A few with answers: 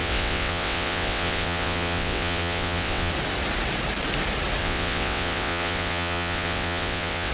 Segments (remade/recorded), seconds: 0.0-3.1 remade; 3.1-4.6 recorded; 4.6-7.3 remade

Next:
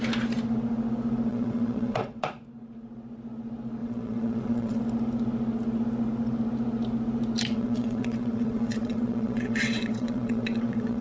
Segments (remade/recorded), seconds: 0.0-1.3 recorded; 1.3-2.2 remade; 2.2-3.8 recorded; 3.8-4.8 remade; 4.8-7.5 recorded; 7.5-11.0 remade